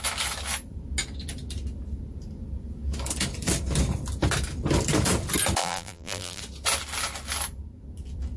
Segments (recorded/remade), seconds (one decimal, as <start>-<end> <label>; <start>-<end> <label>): 0.0-5.6 recorded; 5.6-6.4 remade; 6.4-8.4 recorded

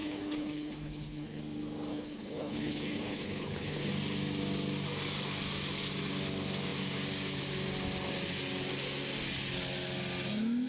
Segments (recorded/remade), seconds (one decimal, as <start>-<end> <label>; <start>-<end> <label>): 0.0-1.4 remade; 1.4-1.9 recorded; 1.9-3.9 remade; 3.9-10.7 recorded

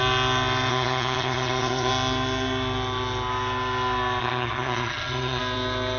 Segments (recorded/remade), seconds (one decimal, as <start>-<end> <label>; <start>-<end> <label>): 0.0-0.7 recorded; 0.7-1.9 remade; 1.9-4.2 recorded; 4.2-5.4 remade; 5.4-6.0 recorded

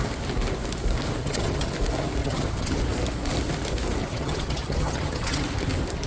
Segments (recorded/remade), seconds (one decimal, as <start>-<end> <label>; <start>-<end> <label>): 0.0-1.2 recorded; 1.2-1.7 remade; 1.7-2.2 recorded; 2.2-2.8 remade; 2.8-4.0 recorded; 4.0-5.4 remade; 5.4-6.1 recorded

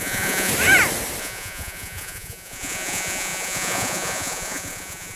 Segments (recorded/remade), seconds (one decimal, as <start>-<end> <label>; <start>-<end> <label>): 0.0-0.5 remade; 0.5-1.2 recorded; 1.2-5.2 remade

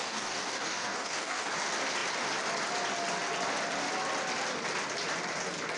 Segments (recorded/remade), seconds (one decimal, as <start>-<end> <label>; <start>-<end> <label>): 0.0-1.5 remade; 1.5-5.8 recorded

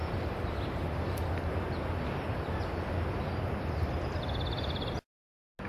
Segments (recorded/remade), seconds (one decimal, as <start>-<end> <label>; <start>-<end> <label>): 0.0-1.0 remade; 1.0-5.7 recorded